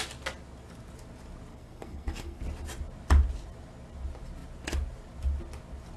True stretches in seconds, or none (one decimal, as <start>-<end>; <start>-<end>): 0.0-1.5; 2.4-6.0